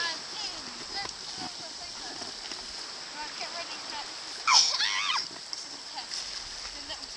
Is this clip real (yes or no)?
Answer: yes